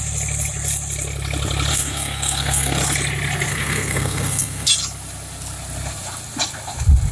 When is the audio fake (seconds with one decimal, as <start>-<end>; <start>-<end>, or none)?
1.7-2.8; 3.5-4.7